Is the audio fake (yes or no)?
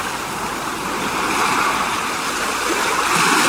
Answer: no